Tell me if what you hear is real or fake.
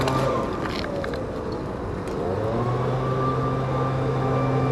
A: real